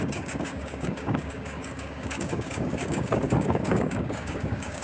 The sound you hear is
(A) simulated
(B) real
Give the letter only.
A